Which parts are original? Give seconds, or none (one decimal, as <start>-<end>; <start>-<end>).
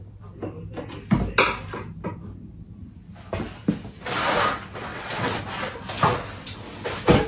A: 0.0-4.9; 5.4-7.3